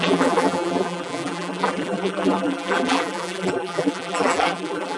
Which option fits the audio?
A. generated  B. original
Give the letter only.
A